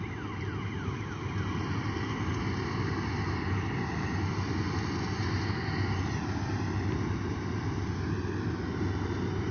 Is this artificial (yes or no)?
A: no